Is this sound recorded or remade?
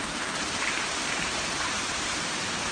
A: remade